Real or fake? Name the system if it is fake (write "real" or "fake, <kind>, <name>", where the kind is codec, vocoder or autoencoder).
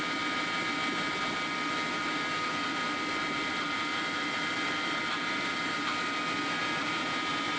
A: real